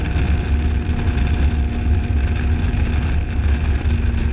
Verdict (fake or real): real